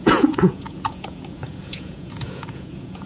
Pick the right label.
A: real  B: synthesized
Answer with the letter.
B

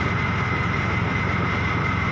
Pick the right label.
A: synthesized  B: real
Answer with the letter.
B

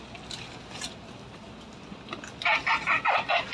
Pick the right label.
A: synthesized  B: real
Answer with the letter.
B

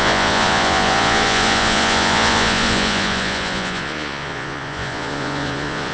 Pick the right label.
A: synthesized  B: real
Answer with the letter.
A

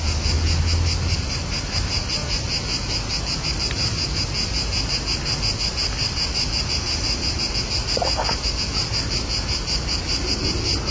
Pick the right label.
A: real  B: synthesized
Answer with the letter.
A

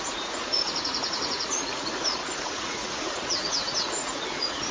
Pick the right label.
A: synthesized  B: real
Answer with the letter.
A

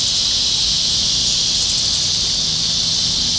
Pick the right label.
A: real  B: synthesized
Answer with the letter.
A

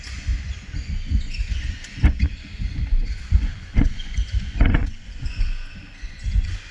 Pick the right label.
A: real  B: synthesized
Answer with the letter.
B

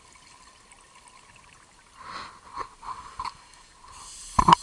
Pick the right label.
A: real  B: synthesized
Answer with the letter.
A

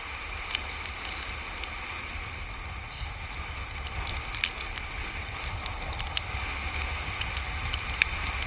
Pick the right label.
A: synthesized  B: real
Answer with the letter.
B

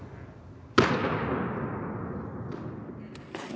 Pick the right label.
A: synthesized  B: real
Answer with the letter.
B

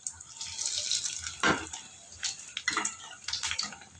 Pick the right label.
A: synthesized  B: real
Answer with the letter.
B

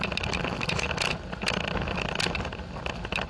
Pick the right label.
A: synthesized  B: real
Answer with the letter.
B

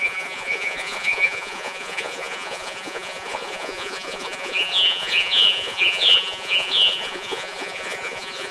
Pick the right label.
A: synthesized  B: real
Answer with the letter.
A